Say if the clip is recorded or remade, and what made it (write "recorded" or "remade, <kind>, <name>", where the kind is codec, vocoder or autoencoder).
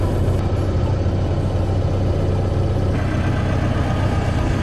recorded